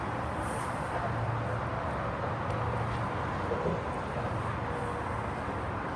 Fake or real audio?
real